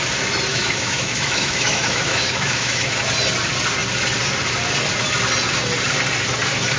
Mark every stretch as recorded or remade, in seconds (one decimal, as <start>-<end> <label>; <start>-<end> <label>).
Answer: 0.0-0.5 recorded; 0.5-2.9 remade; 2.9-6.8 recorded